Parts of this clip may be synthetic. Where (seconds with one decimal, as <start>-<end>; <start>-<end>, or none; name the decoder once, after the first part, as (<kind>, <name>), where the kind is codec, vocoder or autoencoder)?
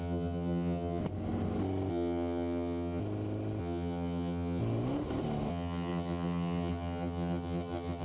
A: 0.0-1.0 (vocoder, HiFi-GAN); 1.9-3.0; 3.6-4.6; 5.5-8.0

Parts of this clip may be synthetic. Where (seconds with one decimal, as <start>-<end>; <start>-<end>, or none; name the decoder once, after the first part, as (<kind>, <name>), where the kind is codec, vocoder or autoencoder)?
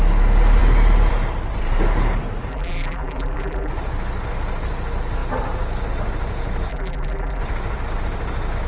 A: 2.5-3.7 (vocoder, BigVGAN v2); 6.7-7.4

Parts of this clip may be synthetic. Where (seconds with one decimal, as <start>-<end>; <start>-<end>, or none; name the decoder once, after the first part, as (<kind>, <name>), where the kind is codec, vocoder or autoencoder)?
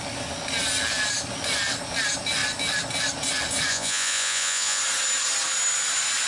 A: 3.7-4.8 (vocoder, Vocos)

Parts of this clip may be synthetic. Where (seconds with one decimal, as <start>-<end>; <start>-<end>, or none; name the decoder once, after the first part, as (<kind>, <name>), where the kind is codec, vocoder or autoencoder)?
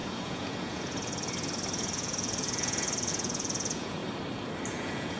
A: 0.0-4.0 (vocoder, Vocos); 4.7-5.2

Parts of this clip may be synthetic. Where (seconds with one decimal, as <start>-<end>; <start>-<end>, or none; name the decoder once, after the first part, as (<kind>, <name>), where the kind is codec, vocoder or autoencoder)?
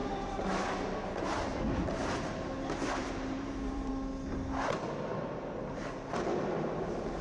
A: 3.0-3.9 (vocoder, BigVGAN v2)